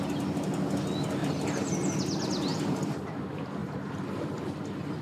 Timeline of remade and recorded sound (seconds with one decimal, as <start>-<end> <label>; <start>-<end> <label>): 0.0-1.2 recorded; 1.2-2.0 remade; 2.0-2.5 recorded; 2.5-3.2 remade; 3.2-3.6 recorded; 3.6-4.4 remade; 4.4-5.0 recorded